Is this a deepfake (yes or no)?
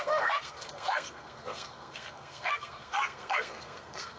yes